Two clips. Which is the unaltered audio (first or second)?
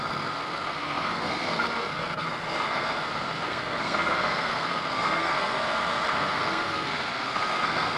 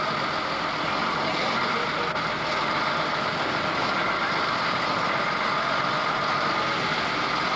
second